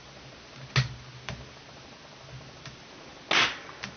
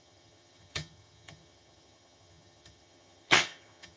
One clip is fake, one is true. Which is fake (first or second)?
second